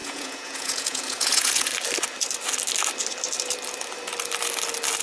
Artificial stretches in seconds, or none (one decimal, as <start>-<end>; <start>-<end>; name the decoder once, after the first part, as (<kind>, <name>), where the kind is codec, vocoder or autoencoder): 0.0-1.7 (vocoder, Vocos)